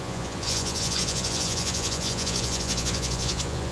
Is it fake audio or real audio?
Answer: fake